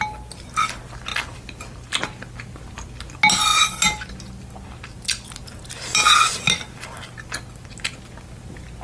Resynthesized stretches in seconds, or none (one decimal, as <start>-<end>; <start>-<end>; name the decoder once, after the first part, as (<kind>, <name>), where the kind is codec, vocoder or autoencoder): none